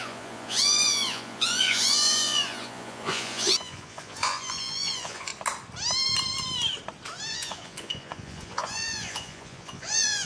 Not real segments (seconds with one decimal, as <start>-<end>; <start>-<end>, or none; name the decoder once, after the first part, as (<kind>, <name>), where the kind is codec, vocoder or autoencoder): 0.0-5.3 (vocoder, Vocos); 7.3-10.3